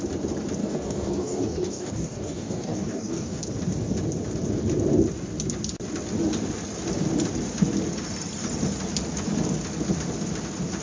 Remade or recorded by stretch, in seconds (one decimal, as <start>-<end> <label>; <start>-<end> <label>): 0.0-0.6 recorded; 0.6-3.4 remade; 3.4-10.8 recorded